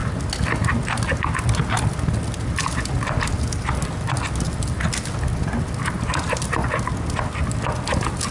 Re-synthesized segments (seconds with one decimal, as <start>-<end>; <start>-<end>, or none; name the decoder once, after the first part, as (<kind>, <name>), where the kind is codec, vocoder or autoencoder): none